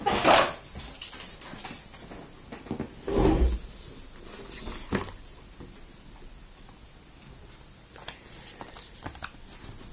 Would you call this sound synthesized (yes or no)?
no